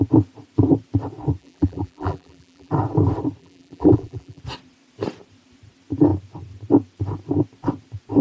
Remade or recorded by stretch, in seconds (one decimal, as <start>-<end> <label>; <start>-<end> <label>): 0.0-1.4 recorded; 1.4-2.7 remade; 2.7-3.4 recorded; 3.4-4.4 remade; 4.4-8.2 recorded